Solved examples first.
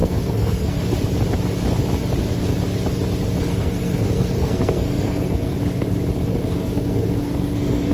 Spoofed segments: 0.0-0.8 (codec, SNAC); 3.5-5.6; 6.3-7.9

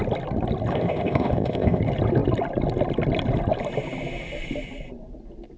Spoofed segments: 0.7-1.8 (codec, ZipCodec)

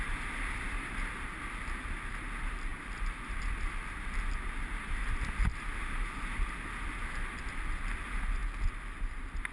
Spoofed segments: none

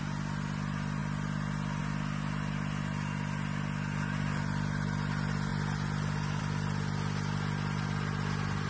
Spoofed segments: none

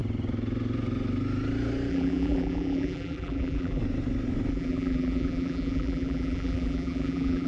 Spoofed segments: 1.9-3.8 (vocoder, BigVGAN v2); 4.5-7.5

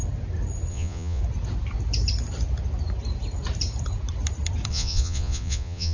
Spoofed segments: 0.7-1.2 (vocoder, Vocos); 4.7-5.9

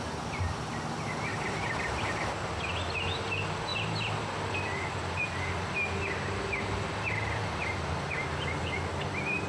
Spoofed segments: 1.3-2.1 (vocoder, BigVGAN v2)